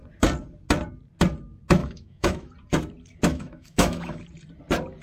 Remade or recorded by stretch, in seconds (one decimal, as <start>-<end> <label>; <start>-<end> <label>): 0.0-1.8 recorded; 1.8-2.5 remade; 2.5-3.3 recorded; 3.3-4.2 remade; 4.2-5.0 recorded